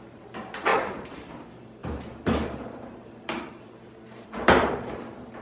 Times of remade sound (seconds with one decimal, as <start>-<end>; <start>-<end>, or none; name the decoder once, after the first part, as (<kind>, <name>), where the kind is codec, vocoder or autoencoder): 0.7-1.3 (vocoder, BigVGAN v2); 1.8-5.0